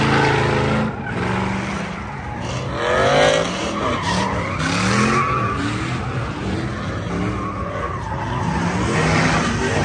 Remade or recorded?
recorded